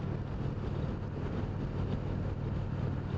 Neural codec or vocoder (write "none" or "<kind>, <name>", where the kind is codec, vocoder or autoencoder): none